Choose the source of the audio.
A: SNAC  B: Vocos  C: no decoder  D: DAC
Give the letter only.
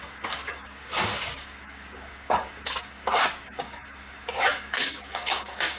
D